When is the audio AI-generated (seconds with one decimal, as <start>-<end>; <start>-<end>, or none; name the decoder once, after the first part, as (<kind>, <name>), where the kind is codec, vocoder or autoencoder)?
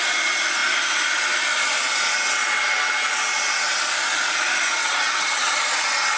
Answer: 4.8-5.5 (vocoder, HiFi-GAN)